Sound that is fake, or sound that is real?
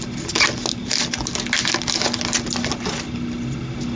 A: real